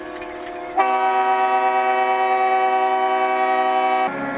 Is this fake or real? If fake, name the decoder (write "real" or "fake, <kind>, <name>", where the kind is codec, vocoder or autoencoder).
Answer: real